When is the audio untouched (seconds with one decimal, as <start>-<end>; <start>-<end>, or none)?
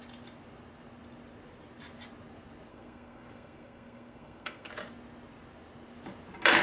0.0-2.7; 4.7-6.6